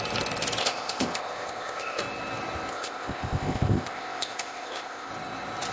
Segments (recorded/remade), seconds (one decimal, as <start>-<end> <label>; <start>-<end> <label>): 0.0-0.6 recorded; 0.6-2.0 remade; 2.0-2.7 recorded; 2.7-5.1 remade; 5.1-5.7 recorded

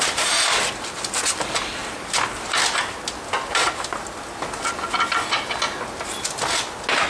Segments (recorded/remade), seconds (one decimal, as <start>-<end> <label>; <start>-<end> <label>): 0.0-7.1 recorded

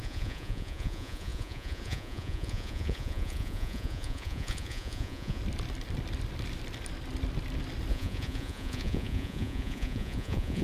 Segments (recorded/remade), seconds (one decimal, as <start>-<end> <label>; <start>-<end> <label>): 0.0-5.4 remade; 5.4-7.9 recorded; 7.9-10.6 remade